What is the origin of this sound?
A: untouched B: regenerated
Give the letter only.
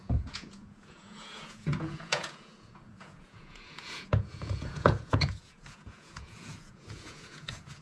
B